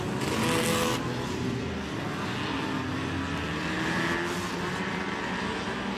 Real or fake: real